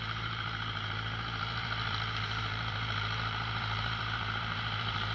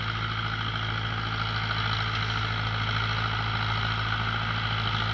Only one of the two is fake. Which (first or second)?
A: first